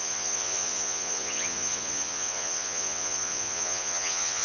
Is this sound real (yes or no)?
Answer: no